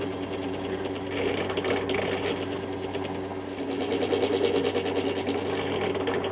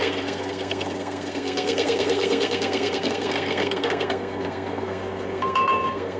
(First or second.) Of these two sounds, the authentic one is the first